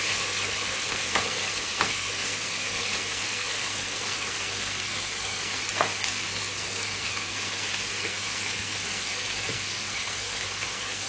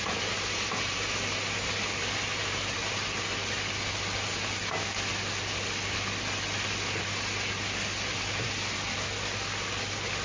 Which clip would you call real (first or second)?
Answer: second